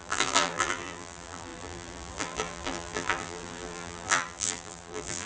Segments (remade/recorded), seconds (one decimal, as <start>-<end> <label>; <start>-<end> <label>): 0.0-5.3 remade